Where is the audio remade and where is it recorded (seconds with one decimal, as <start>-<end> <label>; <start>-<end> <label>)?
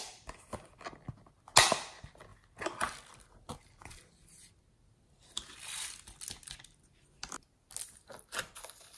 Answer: 0.0-9.0 recorded